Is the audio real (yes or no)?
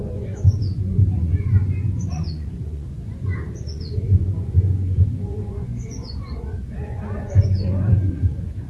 no